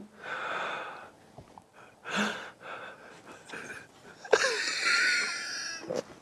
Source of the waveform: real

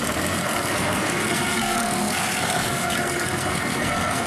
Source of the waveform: fake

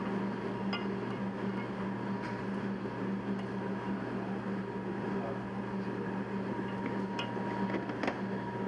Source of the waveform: real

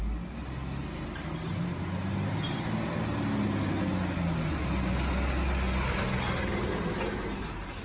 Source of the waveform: real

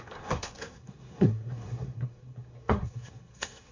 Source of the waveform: fake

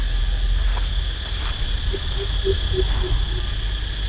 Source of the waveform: real